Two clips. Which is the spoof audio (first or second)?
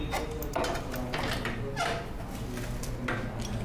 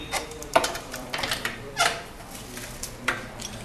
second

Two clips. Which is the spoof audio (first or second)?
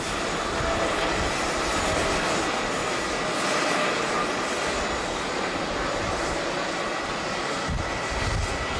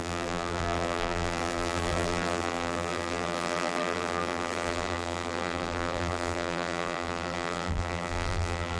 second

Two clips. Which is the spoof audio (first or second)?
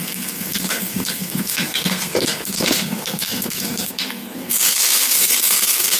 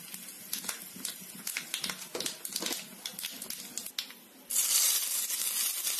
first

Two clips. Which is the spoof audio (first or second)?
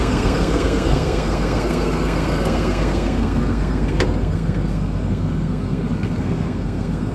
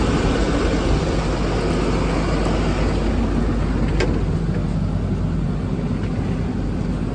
first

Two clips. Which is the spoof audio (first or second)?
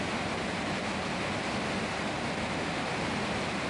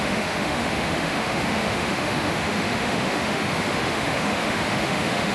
second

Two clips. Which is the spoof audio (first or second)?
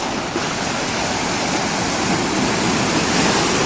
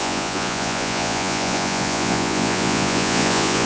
second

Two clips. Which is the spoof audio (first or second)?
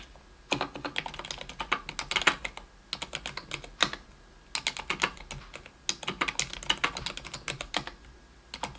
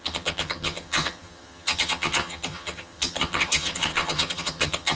second